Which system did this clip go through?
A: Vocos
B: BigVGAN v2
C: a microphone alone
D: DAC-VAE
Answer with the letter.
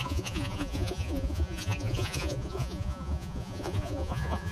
A